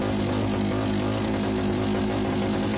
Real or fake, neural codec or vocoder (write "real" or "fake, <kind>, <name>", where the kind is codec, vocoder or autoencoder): real